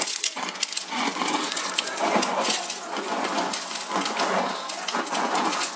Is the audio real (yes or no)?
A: no